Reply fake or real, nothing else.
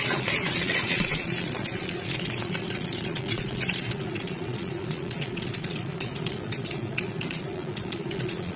fake